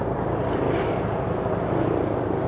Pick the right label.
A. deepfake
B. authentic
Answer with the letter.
B